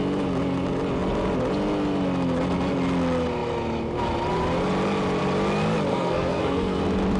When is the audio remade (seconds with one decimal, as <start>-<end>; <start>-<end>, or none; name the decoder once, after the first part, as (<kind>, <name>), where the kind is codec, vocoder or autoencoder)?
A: 5.9-6.8 (codec, SNAC)